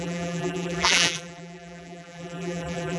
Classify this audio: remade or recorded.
remade